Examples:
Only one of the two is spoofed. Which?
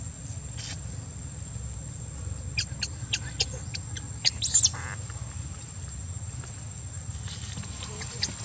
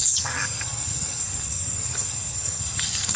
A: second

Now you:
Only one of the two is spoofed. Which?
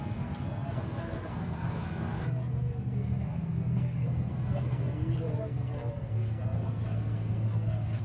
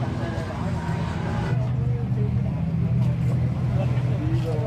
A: first